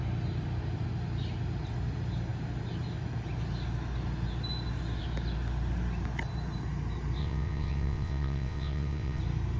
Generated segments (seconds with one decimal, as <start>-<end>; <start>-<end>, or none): 7.2-9.2